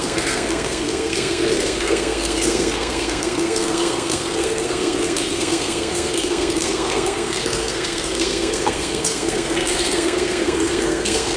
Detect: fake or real fake